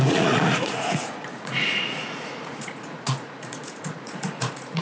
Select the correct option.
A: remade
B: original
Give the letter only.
A